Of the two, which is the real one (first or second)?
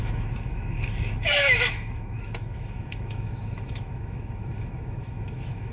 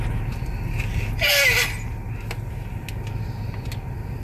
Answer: second